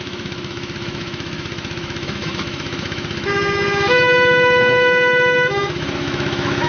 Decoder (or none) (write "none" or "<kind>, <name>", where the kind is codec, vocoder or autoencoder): autoencoder, DAC-VAE